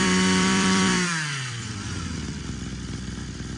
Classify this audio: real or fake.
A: fake